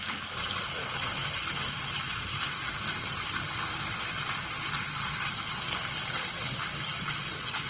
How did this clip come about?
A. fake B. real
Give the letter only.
B